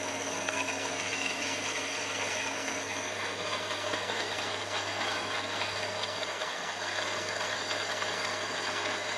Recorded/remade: remade